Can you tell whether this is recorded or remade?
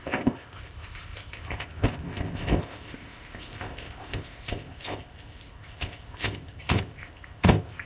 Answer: remade